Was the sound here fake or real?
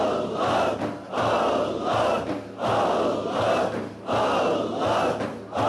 real